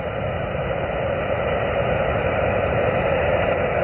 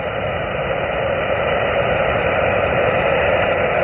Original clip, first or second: first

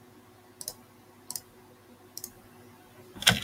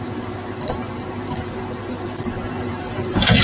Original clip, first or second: first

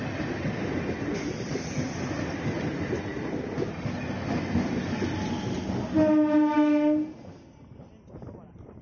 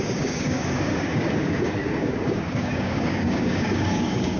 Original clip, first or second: first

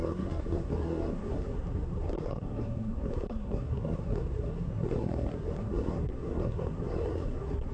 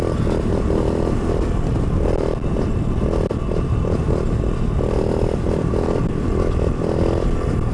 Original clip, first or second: second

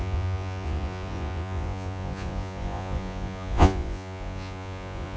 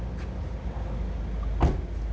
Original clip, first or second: second